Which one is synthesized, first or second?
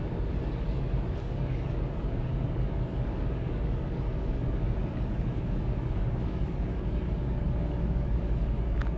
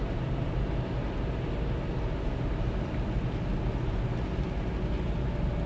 first